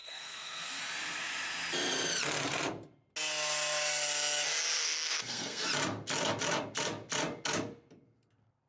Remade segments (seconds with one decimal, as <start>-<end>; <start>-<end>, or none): 0.0-0.8; 4.8-5.7